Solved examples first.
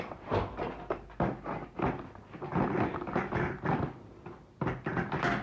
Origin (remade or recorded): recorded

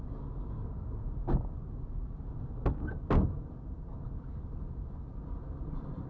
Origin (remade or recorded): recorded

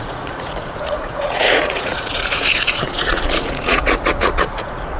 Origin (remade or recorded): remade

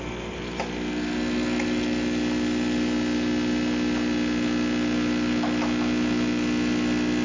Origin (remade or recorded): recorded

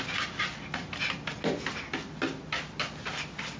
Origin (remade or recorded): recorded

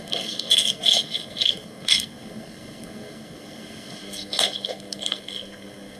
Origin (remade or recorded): remade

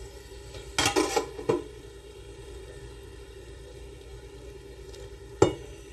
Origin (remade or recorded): recorded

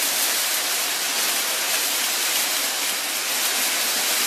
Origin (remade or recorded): recorded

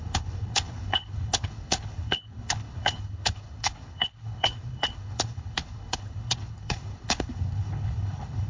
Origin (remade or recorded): remade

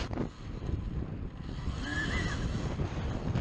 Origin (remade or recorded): recorded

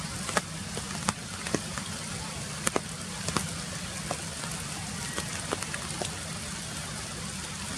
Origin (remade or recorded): recorded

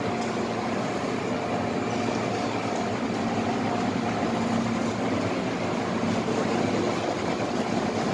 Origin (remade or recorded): recorded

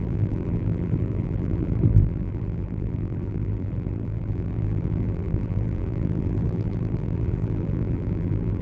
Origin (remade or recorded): remade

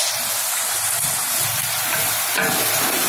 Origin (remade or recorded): recorded